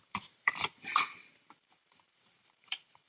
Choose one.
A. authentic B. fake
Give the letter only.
B